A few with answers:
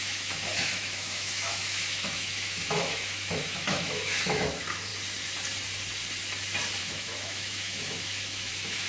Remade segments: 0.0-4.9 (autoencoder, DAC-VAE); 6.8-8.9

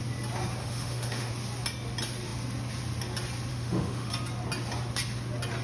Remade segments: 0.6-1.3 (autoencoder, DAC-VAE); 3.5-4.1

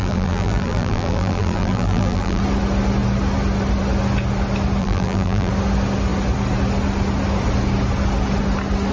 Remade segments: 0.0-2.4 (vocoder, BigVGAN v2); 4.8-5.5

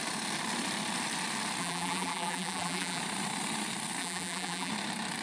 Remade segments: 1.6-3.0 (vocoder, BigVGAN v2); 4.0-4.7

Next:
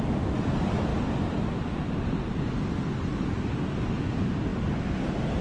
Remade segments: none